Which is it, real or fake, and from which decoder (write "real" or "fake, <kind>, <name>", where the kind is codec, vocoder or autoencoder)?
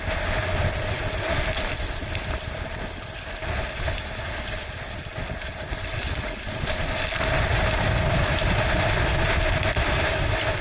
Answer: real